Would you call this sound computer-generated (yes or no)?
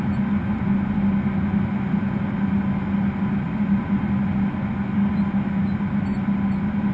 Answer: no